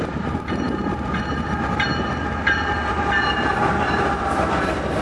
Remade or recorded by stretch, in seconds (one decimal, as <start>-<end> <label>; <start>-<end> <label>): 0.0-1.9 remade; 1.9-2.9 recorded; 2.9-5.0 remade